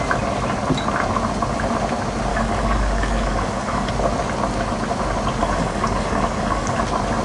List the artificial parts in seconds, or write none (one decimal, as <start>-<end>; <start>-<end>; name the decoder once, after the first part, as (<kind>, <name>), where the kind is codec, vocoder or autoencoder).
2.3-3.9 (codec, DAC); 5.4-6.8

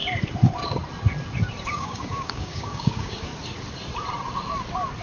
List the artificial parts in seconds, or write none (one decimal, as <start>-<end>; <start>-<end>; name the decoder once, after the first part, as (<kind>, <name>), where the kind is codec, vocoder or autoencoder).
1.7-3.3 (codec, DAC)

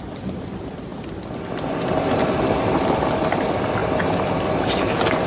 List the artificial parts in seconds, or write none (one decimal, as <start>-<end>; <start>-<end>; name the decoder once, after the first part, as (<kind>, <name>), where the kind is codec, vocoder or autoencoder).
none

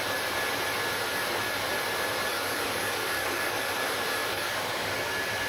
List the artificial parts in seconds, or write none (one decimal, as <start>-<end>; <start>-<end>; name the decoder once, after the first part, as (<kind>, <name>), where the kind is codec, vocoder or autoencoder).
2.3-3.7 (codec, DAC); 4.2-4.9

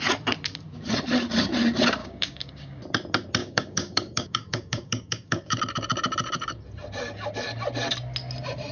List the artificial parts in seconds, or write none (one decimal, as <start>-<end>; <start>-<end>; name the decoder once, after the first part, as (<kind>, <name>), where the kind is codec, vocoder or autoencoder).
2.0-2.8 (codec, DAC); 3.4-5.6

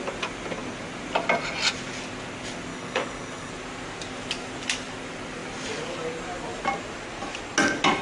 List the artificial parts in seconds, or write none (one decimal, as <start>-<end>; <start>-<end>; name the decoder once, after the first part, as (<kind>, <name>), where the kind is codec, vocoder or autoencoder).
2.7-3.5 (codec, DAC)